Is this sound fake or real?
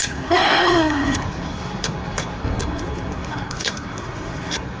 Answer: fake